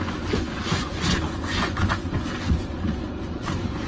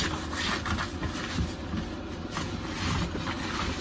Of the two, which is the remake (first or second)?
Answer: first